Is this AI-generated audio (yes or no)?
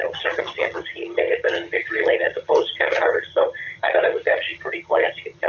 yes